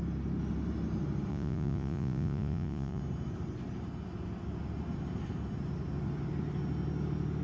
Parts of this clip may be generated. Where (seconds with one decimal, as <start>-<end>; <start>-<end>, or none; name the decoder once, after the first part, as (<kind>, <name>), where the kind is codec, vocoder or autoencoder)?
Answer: 1.3-3.0 (vocoder, Vocos)